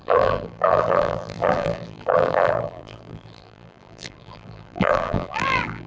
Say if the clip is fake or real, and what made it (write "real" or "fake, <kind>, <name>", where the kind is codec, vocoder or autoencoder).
fake, vocoder, BigVGAN v2